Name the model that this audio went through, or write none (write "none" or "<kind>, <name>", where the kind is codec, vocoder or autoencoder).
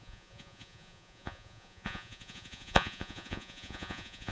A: vocoder, Vocos